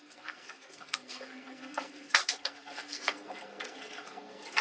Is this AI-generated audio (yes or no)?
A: yes